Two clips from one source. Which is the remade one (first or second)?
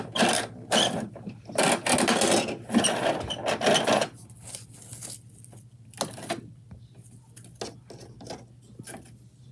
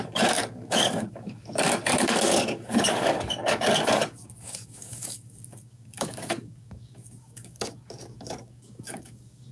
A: second